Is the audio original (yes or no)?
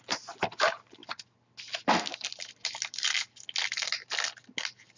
yes